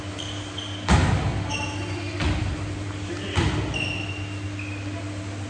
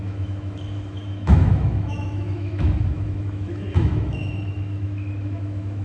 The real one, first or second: first